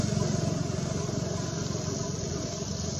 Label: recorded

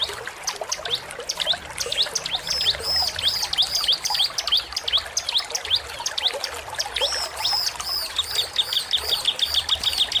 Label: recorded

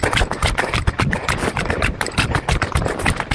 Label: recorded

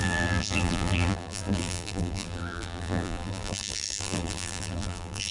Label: remade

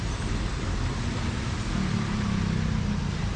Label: remade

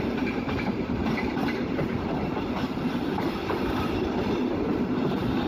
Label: remade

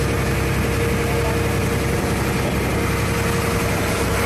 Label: recorded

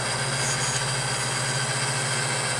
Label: recorded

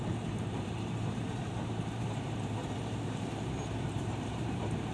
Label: remade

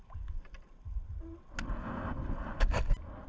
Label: recorded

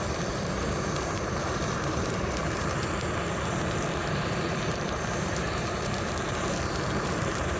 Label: remade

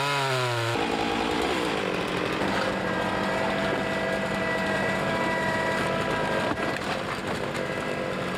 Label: recorded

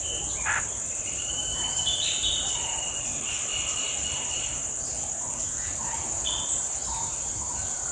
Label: remade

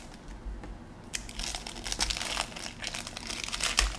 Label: recorded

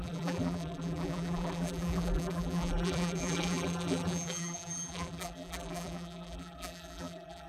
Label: remade